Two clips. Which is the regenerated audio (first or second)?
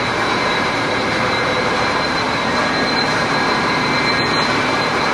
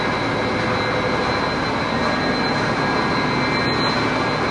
first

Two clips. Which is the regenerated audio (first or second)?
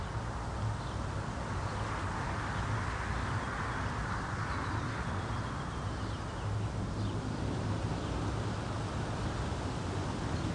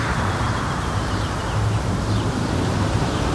second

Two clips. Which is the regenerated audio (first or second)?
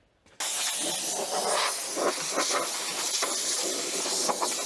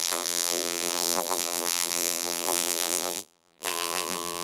second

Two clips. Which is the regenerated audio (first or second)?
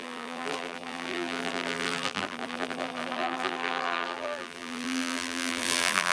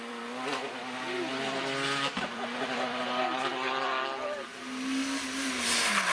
first